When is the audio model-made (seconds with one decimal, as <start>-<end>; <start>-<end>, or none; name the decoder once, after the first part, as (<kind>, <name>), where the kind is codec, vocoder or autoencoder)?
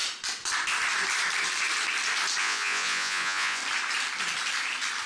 2.4-3.6 (vocoder, Vocos)